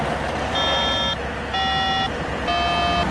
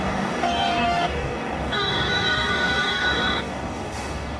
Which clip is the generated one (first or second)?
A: second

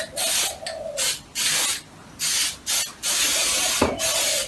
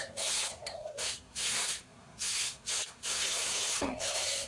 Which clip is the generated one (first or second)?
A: second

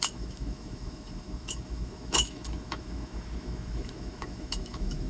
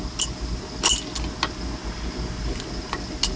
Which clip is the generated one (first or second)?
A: first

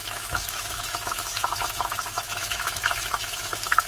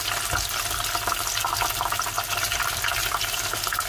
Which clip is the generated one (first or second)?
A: first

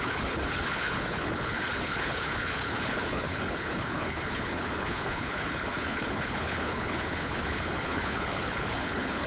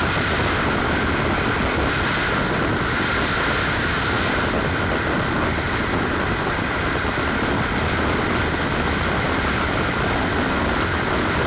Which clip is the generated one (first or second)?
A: first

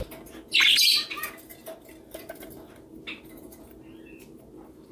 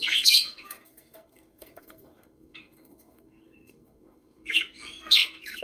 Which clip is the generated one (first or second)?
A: second